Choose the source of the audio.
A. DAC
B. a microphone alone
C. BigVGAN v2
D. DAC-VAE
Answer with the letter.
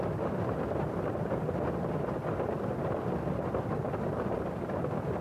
B